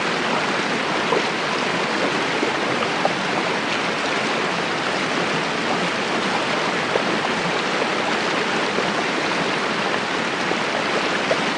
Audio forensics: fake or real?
real